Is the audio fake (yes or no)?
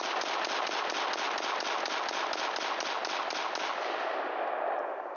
no